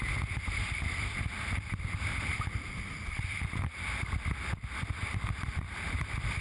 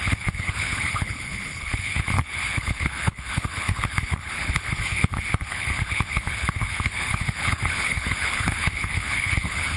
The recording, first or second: first